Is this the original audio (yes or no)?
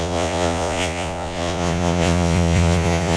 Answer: no